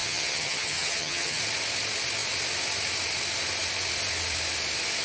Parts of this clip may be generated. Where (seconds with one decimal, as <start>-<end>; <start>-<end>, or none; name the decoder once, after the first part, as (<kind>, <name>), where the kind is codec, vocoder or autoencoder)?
0.0-1.4 (vocoder, HiFi-GAN)